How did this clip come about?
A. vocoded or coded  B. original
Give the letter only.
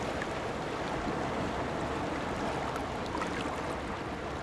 B